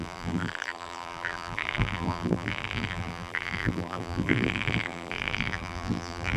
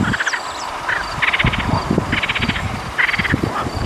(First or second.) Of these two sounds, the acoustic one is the second